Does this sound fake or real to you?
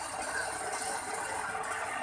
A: real